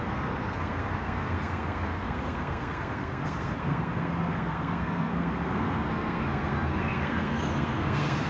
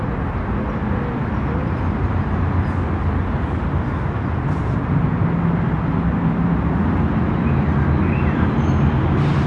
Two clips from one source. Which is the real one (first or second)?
second